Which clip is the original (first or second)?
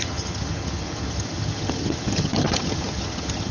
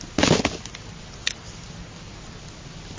second